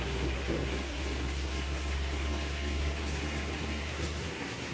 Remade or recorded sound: remade